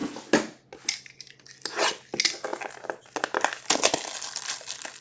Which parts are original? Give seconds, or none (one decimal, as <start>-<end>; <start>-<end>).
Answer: 0.0-5.0